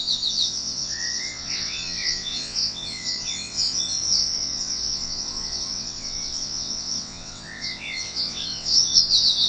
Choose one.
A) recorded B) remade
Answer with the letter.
B